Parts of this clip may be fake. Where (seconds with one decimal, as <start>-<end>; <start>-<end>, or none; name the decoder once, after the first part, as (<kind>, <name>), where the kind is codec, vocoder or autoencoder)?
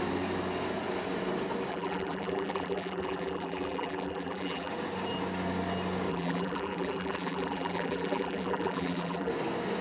1.7-4.7 (vocoder, BigVGAN v2); 6.1-9.3